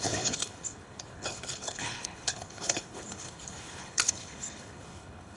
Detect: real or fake fake